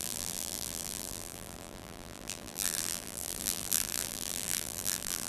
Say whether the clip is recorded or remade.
remade